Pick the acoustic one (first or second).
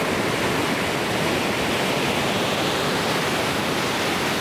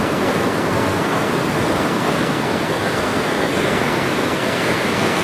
first